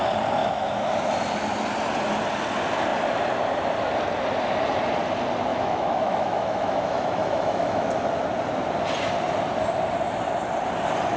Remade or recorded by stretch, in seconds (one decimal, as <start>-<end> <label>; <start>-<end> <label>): 0.0-0.4 recorded; 0.4-1.1 remade; 1.1-5.5 recorded; 5.5-7.9 remade; 7.9-11.2 recorded